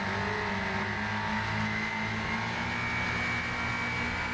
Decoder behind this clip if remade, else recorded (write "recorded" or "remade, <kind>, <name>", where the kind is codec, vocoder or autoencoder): recorded